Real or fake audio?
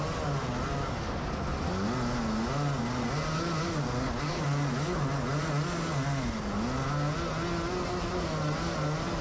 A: real